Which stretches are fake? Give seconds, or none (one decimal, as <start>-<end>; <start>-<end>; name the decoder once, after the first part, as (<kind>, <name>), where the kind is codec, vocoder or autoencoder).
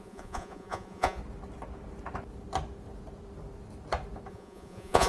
0.0-1.2 (vocoder, Vocos); 4.3-5.1